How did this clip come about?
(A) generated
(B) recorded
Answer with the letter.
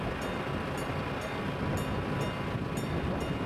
B